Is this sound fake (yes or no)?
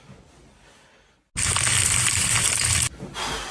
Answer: no